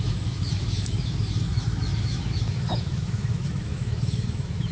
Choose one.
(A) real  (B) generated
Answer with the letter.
B